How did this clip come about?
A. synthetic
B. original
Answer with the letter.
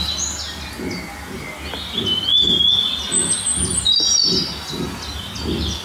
B